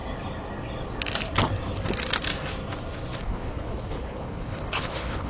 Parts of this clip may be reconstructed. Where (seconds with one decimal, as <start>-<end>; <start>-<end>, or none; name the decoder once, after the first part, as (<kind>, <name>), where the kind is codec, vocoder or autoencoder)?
3.2-5.3 (codec, HILCodec)